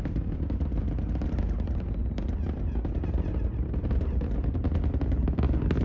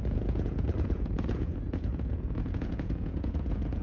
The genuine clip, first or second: first